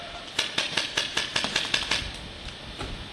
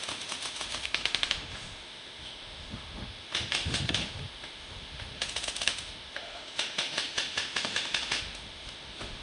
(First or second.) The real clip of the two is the first